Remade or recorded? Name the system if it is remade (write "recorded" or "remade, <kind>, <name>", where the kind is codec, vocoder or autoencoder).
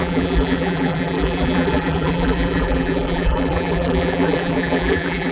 remade, vocoder, BigVGAN v2